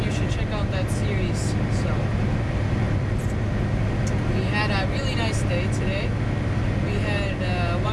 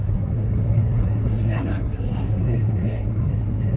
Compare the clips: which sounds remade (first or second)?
second